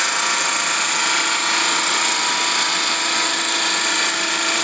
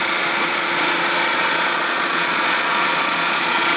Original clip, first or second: first